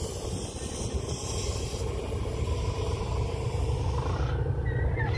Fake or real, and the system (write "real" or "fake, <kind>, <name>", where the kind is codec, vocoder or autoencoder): real